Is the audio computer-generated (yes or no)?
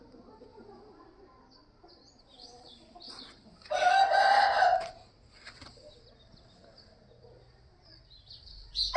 no